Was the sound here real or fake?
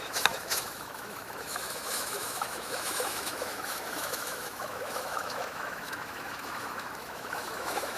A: fake